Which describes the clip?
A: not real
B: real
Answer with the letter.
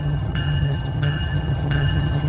A